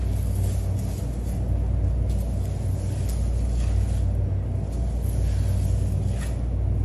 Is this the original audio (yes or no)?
yes